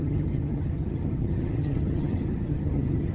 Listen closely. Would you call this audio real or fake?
fake